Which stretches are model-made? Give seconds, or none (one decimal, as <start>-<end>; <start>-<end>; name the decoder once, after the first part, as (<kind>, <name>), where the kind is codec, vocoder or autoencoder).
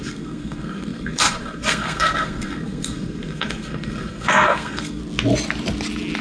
0.0-5.0 (codec, SNAC)